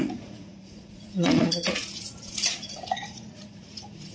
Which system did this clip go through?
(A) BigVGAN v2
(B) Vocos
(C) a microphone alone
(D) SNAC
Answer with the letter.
B